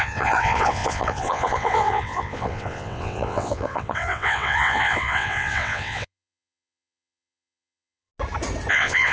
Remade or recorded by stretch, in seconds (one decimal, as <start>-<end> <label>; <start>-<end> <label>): 0.0-8.1 remade; 8.1-8.7 recorded; 8.7-9.1 remade

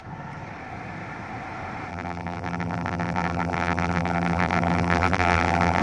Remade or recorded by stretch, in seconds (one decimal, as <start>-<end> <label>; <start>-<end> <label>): 0.0-1.9 recorded; 1.9-5.8 remade